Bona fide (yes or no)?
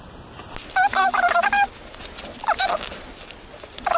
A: yes